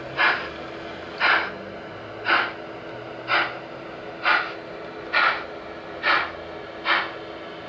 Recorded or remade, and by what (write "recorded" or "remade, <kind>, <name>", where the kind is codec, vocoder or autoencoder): recorded